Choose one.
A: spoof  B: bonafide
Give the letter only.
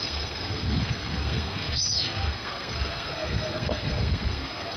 A